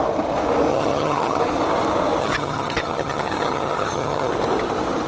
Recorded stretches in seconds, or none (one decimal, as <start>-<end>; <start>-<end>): 0.0-0.7; 1.4-2.2; 4.3-5.1

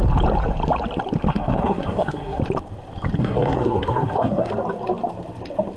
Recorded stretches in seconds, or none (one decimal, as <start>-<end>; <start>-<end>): 0.0-1.3; 2.4-3.2; 4.5-5.8

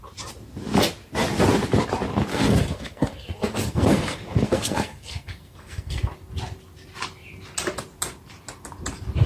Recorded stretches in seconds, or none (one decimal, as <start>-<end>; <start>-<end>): 0.0-2.3; 6.1-9.3

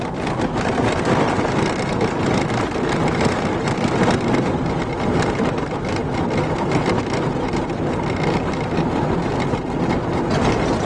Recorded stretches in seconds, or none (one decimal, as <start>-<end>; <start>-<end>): 0.0-10.8

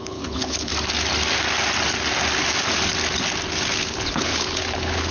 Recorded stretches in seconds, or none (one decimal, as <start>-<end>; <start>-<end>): 0.7-3.8

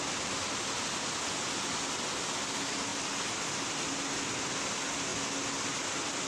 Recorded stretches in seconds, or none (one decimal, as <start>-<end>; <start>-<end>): 0.0-6.3

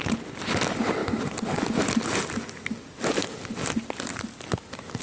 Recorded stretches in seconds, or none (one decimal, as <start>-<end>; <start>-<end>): 0.0-5.0